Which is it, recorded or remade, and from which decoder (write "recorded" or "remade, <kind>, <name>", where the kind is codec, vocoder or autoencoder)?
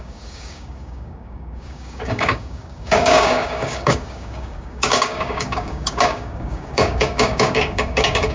remade, codec, DAC